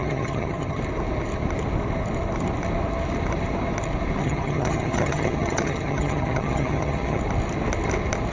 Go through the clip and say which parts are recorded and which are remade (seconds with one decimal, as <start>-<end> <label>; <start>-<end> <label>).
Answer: 0.0-0.8 remade; 0.8-4.2 recorded; 4.2-7.2 remade; 7.2-8.3 recorded